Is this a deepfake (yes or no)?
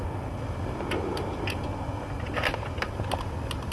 no